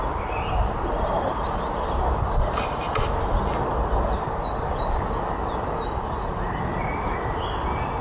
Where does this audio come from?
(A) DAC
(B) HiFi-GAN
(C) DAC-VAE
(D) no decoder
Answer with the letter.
D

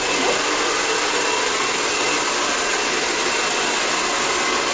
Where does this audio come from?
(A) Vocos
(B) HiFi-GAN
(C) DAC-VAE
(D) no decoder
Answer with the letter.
D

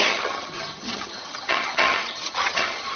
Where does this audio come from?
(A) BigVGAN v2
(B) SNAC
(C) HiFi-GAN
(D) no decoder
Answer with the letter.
C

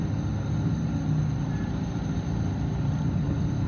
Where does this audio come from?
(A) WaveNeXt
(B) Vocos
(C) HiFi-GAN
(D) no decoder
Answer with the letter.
D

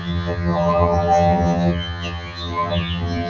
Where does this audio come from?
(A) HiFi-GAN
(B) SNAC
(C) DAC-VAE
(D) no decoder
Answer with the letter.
A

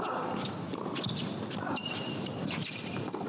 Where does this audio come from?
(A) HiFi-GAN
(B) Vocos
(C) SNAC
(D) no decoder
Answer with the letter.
D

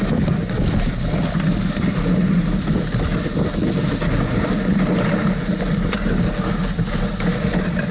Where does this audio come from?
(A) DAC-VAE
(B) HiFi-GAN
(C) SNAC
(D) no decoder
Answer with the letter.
D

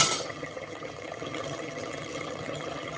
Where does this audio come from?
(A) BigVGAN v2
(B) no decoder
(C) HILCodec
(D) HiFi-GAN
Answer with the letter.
D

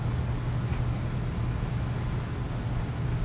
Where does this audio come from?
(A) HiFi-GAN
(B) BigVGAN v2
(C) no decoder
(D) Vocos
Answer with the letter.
C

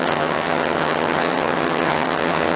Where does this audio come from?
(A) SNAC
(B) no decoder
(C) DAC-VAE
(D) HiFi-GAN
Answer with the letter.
D